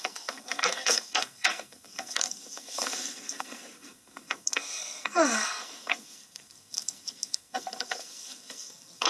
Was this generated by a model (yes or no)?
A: yes